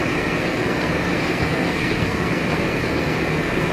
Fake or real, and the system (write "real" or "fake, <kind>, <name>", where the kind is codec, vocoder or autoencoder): fake, codec, SNAC